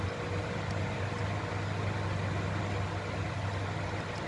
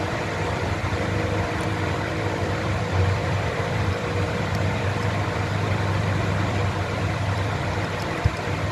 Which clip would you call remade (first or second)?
second